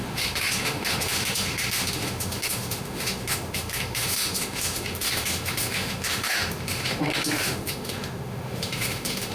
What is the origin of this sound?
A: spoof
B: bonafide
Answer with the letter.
A